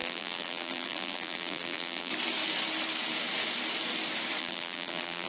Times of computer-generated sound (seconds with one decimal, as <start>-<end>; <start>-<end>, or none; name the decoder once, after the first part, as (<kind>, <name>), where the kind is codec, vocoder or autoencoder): 0.0-2.1 (vocoder, BigVGAN v2); 4.4-5.3